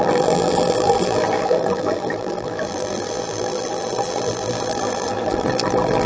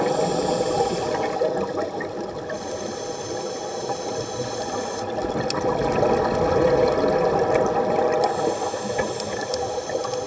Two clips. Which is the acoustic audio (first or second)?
second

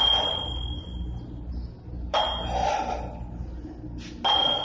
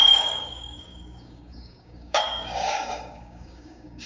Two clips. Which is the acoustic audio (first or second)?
first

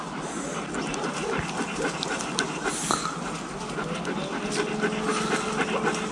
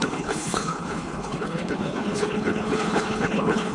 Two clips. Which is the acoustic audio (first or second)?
first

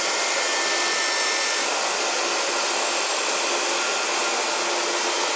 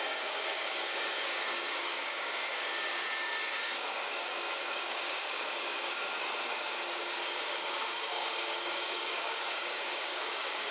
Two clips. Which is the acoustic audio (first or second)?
first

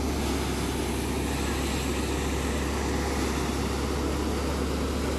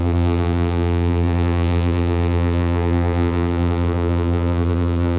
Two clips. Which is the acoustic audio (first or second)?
first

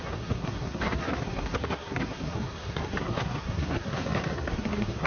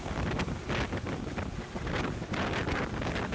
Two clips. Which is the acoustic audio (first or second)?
second